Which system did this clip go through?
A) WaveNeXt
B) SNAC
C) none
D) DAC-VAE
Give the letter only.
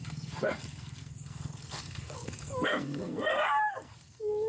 B